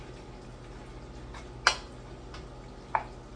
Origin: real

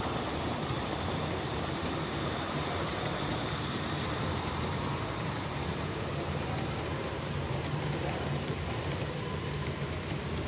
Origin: fake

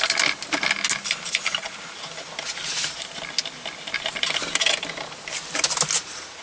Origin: real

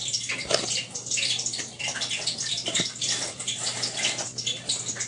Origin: fake